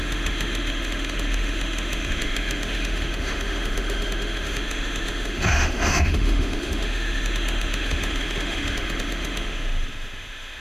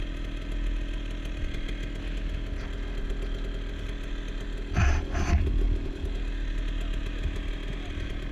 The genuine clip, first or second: second